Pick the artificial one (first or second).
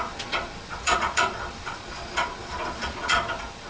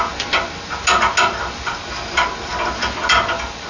first